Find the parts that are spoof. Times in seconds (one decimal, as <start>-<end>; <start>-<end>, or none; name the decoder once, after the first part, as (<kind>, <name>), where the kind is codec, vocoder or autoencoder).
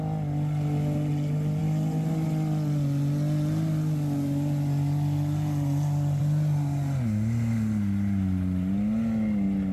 none